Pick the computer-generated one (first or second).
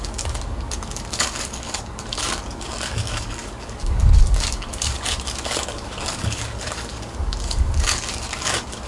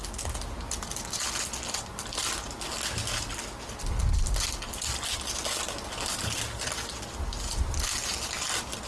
first